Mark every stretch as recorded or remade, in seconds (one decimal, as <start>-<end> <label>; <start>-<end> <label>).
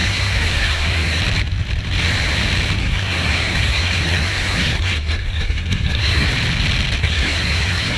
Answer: 0.0-1.2 remade; 1.2-2.8 recorded; 2.8-6.3 remade; 6.3-7.0 recorded; 7.0-8.0 remade